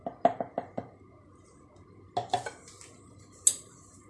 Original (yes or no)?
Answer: yes